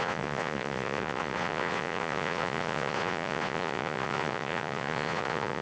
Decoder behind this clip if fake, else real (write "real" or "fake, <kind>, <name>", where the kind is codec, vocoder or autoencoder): fake, vocoder, Vocos